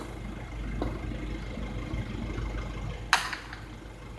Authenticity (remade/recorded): recorded